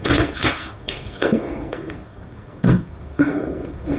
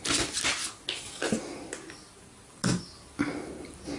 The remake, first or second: first